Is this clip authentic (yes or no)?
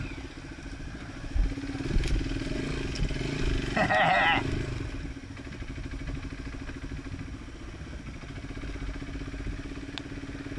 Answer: yes